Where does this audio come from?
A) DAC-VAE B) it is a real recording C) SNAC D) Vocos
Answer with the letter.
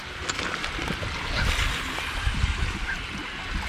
B